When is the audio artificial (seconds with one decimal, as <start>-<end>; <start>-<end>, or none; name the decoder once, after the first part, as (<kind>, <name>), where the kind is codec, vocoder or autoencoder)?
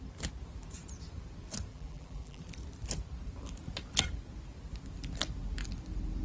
1.7-2.4 (vocoder, BigVGAN v2)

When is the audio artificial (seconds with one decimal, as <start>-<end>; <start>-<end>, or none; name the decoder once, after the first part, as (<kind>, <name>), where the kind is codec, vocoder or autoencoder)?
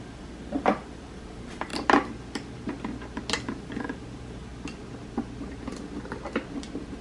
0.0-1.7 (vocoder, BigVGAN v2); 3.8-4.5